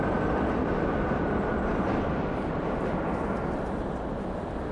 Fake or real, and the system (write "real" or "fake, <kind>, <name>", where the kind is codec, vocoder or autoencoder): real